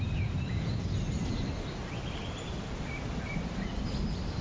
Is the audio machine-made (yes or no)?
no